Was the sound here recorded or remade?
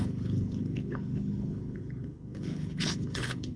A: remade